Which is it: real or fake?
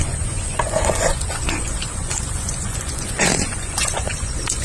fake